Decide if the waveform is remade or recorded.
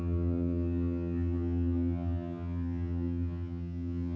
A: remade